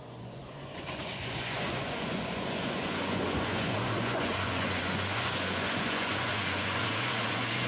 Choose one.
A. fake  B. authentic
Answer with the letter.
A